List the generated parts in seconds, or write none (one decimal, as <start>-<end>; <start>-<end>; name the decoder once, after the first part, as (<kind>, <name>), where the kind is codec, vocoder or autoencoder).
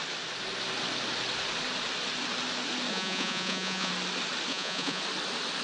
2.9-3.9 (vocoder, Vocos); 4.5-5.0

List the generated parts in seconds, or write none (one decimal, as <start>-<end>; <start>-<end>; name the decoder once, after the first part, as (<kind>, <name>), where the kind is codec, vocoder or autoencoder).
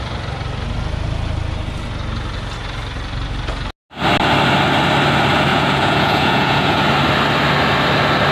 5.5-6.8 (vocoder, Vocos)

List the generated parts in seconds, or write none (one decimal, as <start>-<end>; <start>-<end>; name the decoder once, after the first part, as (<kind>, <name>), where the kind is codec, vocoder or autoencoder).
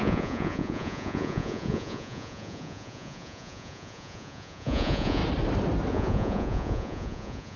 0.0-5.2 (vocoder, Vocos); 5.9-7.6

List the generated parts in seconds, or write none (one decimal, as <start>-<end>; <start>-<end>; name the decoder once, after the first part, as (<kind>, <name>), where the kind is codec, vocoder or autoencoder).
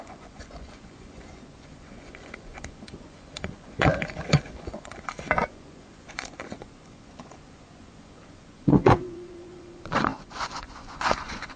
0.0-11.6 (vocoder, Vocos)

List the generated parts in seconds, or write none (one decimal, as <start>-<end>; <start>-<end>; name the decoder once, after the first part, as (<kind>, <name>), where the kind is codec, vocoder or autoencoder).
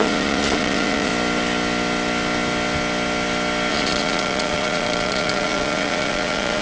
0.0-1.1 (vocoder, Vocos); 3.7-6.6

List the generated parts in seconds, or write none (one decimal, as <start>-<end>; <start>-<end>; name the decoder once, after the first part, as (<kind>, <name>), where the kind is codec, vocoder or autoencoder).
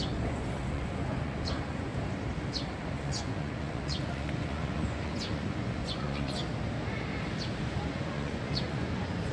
0.0-1.9 (vocoder, Vocos); 2.8-6.4; 7.6-9.3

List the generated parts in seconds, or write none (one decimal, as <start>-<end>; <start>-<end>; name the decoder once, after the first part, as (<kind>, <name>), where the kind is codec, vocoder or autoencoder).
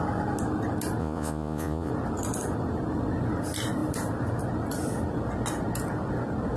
1.0-1.9 (vocoder, Vocos)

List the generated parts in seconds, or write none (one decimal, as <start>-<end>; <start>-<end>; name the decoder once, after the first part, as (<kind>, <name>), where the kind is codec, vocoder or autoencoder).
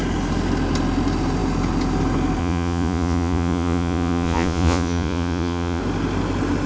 2.4-5.8 (vocoder, Vocos)